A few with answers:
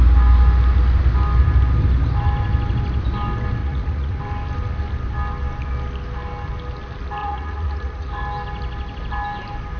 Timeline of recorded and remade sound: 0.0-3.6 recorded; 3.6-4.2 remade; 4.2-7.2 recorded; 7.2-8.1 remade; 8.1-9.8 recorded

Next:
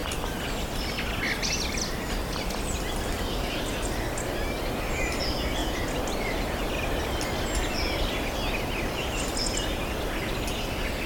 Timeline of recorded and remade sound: 0.0-11.1 recorded

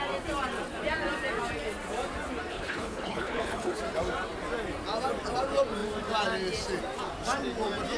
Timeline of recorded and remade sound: 0.0-2.5 recorded; 2.5-3.8 remade; 3.8-8.0 recorded

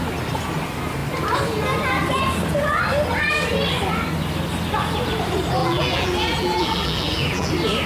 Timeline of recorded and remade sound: 0.0-5.6 recorded; 5.6-7.5 remade; 7.5-7.9 recorded